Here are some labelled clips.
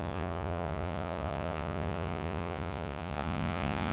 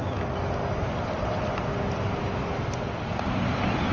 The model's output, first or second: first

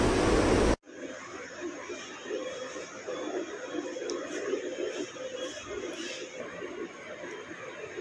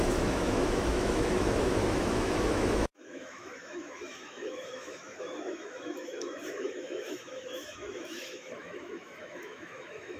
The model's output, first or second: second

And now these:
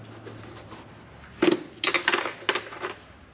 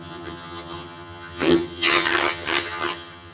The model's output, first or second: second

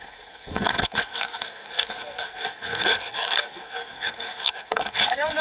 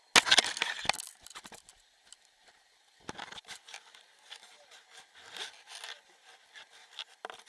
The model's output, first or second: first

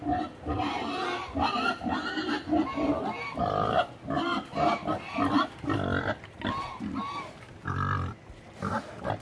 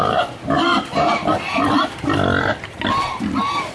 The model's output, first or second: second